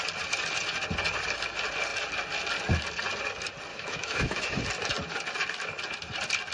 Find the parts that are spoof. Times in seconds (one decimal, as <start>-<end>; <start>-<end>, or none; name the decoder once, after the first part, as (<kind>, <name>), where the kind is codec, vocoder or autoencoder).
3.7-4.6 (autoencoder, DAC-VAE)